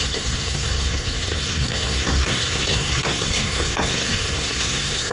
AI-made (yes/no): yes